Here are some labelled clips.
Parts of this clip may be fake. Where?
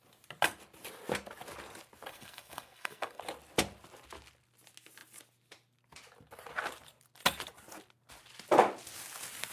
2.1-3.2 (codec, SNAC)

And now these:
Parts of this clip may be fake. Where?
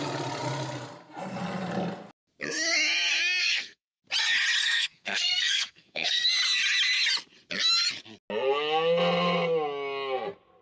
3.4-4.0 (codec, SNAC); 4.6-6.3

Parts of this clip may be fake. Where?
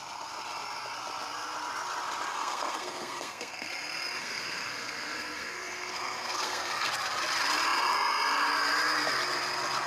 2.3-3.7 (codec, SNAC); 4.2-6.9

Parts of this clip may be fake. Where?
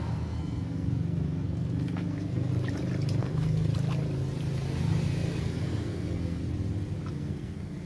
0.0-2.5 (codec, SNAC); 3.2-3.7; 5.4-6.4; 7.1-7.9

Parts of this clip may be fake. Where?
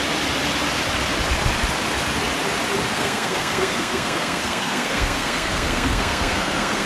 2.9-6.9 (codec, SNAC)